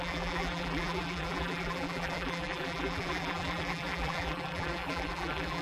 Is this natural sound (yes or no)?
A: no